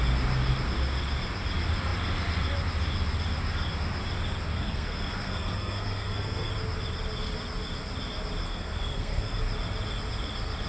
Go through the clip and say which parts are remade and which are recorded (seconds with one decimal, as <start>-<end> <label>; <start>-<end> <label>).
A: 0.0-4.5 recorded; 4.5-6.5 remade; 6.5-8.4 recorded; 8.4-9.4 remade; 9.4-10.7 recorded